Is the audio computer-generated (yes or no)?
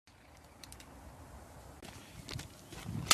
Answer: no